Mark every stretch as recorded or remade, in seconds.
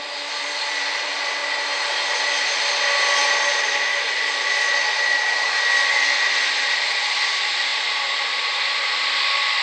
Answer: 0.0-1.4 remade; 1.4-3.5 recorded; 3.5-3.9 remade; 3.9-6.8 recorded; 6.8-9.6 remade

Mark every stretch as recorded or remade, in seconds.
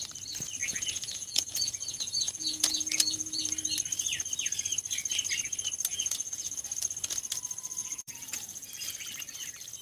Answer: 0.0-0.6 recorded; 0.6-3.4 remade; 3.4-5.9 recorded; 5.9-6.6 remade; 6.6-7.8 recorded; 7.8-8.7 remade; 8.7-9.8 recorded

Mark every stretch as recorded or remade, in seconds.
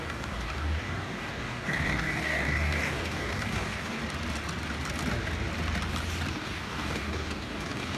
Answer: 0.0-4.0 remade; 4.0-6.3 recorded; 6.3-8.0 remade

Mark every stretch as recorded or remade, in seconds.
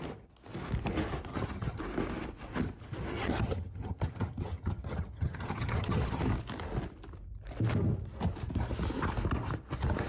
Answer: 0.0-1.3 recorded; 1.3-1.8 remade; 1.8-3.1 recorded; 3.1-6.2 remade; 6.2-10.1 recorded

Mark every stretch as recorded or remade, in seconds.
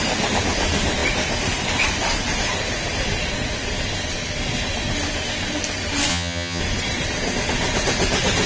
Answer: 0.0-6.1 recorded; 6.1-6.6 remade; 6.6-8.5 recorded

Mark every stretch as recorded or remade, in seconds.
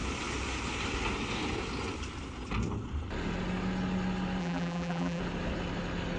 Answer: 0.0-4.4 recorded; 4.4-5.2 remade; 5.2-6.2 recorded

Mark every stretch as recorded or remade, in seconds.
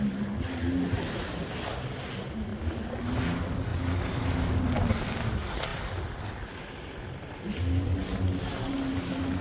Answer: 0.0-9.4 recorded